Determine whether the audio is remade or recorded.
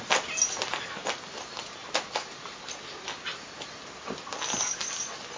recorded